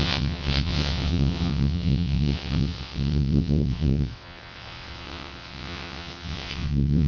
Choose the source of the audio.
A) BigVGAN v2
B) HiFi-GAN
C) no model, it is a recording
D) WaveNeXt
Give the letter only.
D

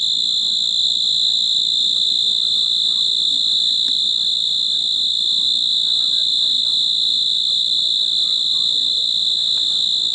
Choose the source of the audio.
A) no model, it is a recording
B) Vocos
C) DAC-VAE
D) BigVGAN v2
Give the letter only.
A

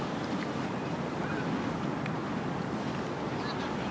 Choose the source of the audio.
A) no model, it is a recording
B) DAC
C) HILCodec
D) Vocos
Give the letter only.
A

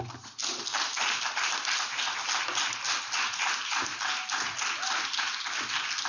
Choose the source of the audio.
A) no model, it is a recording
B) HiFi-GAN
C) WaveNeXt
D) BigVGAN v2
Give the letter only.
A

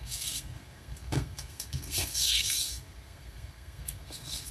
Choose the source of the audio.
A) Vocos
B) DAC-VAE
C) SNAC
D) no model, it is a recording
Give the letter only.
C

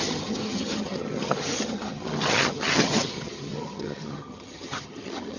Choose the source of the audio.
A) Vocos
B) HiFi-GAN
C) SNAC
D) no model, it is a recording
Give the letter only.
B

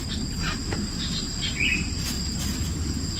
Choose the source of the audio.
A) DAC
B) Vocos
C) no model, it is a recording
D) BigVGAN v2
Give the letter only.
C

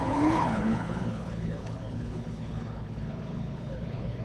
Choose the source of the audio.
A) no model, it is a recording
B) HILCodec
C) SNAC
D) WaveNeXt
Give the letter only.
B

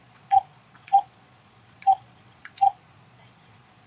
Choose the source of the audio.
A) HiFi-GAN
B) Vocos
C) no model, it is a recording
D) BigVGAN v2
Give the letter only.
B